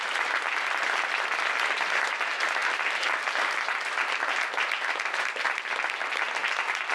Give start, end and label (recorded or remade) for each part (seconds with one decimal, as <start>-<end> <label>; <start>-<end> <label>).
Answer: 0.0-6.9 recorded